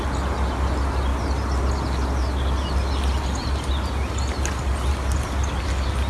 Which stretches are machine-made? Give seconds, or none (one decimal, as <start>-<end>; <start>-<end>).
none